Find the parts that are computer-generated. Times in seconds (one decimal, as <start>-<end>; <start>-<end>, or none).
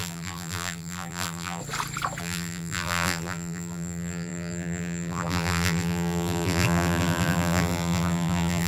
0.0-1.6; 2.2-8.7